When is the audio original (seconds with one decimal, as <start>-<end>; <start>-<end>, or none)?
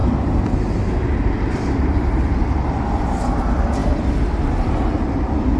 0.0-5.6